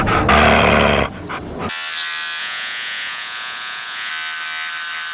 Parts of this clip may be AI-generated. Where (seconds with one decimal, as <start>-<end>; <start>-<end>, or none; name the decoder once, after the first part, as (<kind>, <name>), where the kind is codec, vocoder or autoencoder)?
2.4-4.1 (vocoder, Vocos)